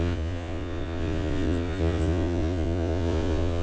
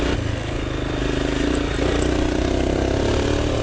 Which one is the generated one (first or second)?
first